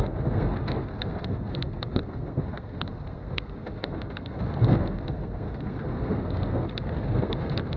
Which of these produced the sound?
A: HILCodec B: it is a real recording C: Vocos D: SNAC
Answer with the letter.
D